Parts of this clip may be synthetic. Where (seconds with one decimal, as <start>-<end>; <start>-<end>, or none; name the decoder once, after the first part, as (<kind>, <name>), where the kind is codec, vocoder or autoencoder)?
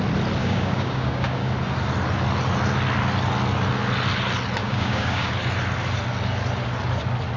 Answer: 0.4-1.5 (codec, DAC); 4.6-5.3